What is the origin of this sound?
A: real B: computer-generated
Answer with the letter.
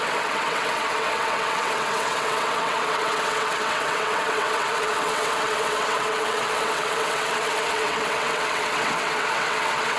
B